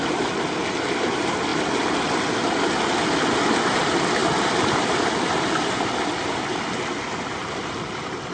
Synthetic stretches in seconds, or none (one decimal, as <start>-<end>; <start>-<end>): none